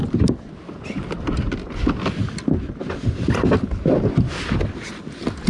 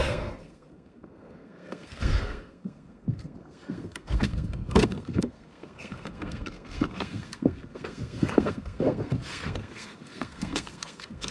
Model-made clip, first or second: second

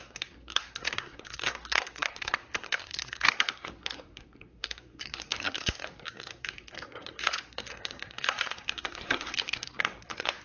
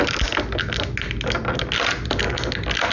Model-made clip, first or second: first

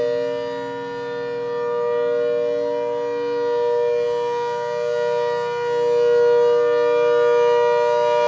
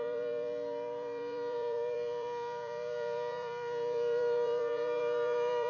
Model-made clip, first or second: second